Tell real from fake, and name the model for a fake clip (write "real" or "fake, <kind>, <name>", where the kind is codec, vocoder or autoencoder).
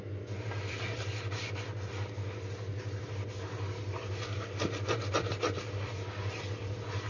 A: real